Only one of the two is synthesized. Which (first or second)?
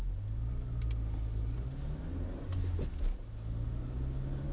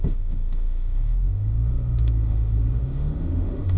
second